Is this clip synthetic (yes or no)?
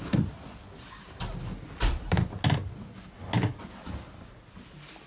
no